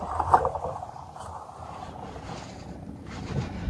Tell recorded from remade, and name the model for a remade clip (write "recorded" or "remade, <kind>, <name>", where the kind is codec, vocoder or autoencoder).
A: remade, vocoder, BigVGAN v2